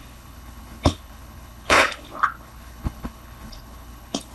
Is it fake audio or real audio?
fake